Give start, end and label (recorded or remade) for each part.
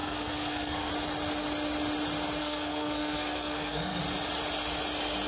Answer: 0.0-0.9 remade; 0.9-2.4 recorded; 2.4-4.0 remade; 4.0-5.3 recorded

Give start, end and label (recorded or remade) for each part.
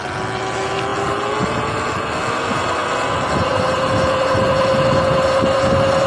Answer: 0.0-6.1 recorded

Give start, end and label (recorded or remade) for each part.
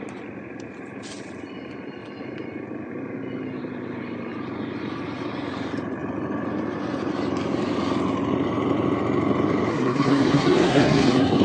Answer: 0.0-9.7 recorded; 9.7-11.4 remade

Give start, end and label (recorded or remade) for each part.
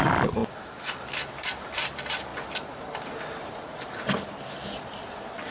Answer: 0.0-5.5 recorded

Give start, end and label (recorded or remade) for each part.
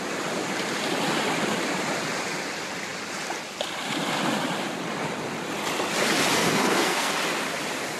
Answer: 0.0-6.4 recorded; 6.4-7.1 remade; 7.1-8.0 recorded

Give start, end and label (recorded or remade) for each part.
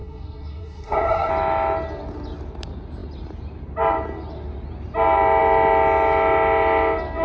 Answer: 0.0-1.3 remade; 1.3-7.2 recorded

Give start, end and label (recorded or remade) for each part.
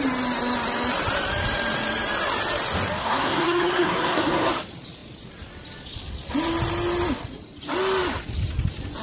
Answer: 0.0-3.0 recorded; 3.0-4.5 remade; 4.5-9.0 recorded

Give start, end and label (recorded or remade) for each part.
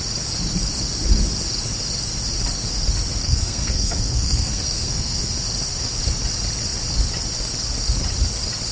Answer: 0.0-3.2 recorded; 3.2-5.3 remade; 5.3-8.7 recorded